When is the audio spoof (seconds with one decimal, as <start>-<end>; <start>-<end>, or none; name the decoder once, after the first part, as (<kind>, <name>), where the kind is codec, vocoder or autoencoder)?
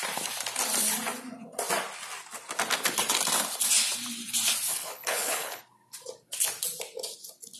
4.7-5.6 (codec, HILCodec)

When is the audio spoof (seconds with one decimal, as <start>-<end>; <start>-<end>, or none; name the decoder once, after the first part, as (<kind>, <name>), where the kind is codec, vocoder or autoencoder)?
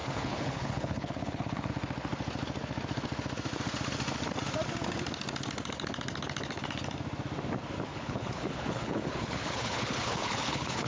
0.0-1.7 (codec, HILCodec); 7.9-10.9